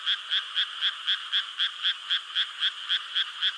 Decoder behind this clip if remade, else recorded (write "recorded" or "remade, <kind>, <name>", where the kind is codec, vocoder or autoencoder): recorded